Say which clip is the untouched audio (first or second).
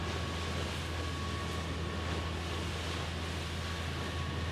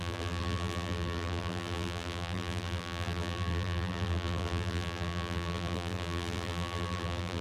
first